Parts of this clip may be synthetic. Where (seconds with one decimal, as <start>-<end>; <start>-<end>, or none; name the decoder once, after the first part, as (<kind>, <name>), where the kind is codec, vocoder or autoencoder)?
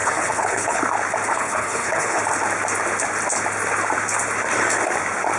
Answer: 0.0-0.8 (codec, HILCodec); 1.3-2.2